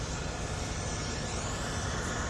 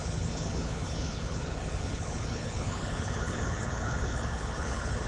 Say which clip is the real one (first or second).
first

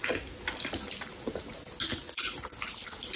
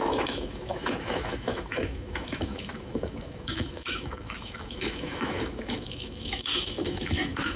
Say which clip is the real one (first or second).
first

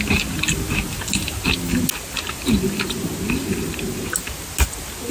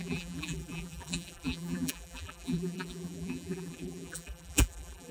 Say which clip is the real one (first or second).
first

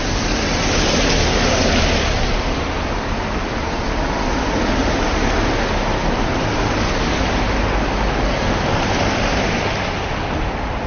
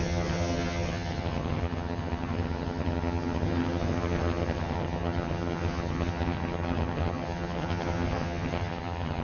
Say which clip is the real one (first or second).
first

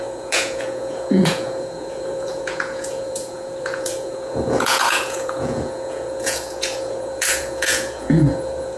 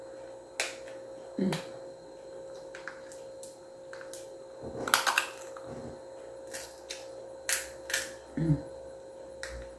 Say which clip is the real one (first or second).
second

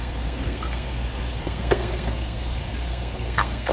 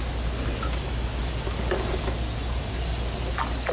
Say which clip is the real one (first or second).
second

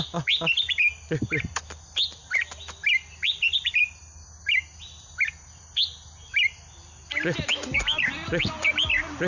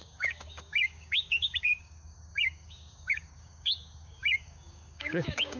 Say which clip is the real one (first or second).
first